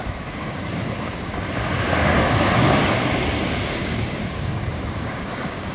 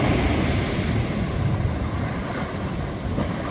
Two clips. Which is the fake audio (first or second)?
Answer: first